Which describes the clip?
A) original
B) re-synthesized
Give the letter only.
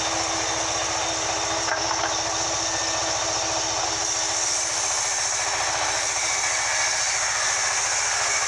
A